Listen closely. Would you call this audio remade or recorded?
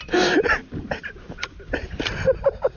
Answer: recorded